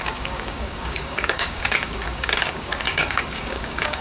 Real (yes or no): no